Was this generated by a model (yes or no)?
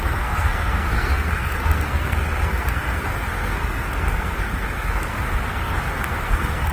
yes